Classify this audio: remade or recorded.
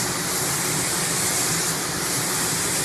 recorded